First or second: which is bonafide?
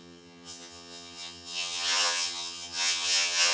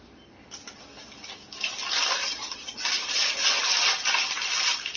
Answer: second